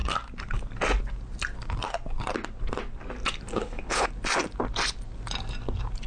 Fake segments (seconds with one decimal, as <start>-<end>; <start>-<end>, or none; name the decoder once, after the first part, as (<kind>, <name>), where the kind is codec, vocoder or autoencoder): 3.5-4.1 (codec, HILCodec)